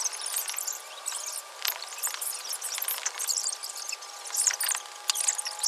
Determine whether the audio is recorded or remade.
recorded